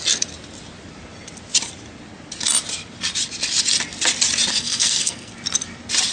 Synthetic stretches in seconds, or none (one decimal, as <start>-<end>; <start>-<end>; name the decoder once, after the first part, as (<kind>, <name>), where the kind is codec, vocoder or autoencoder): 4.5-5.3 (codec, SNAC)